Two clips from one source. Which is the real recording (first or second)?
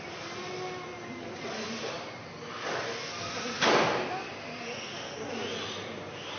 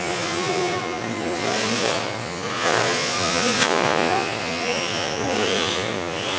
first